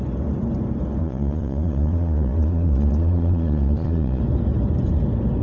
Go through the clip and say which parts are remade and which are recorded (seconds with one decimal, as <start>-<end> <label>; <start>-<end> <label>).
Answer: 0.0-1.0 recorded; 1.0-4.2 remade; 4.2-5.4 recorded